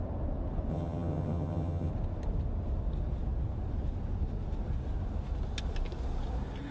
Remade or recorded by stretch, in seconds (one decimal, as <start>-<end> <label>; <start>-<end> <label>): 0.0-0.7 recorded; 0.7-1.9 remade; 1.9-6.7 recorded